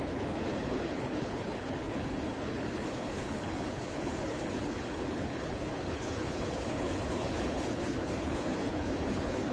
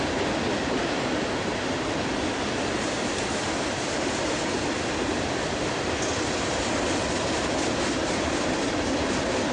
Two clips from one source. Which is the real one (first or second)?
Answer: second